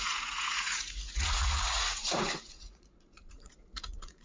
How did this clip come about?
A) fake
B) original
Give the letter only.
A